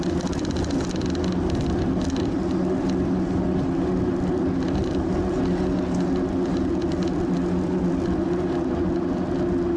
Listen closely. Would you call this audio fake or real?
real